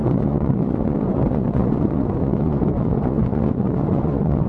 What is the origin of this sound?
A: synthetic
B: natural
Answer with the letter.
A